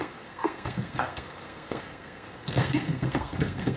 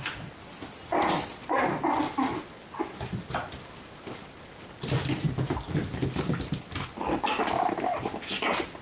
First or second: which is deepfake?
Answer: first